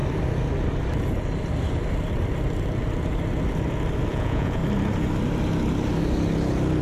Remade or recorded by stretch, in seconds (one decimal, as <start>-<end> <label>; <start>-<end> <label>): 0.0-4.1 recorded; 4.1-4.6 remade; 4.6-6.8 recorded